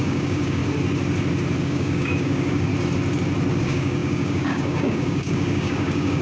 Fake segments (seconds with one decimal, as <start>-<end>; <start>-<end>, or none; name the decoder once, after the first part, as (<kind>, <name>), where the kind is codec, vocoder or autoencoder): 0.0-0.6 (codec, DAC); 1.6-2.7; 3.6-6.2